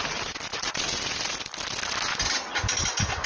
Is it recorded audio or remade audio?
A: recorded